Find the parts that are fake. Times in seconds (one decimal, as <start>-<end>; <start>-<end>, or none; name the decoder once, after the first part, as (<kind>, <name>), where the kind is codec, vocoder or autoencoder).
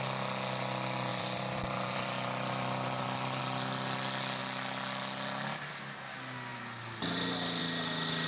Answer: 1.1-3.4 (vocoder, BigVGAN v2)